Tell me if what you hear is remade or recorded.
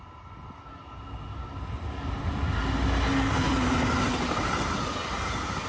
recorded